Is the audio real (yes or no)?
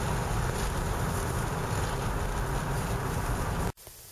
yes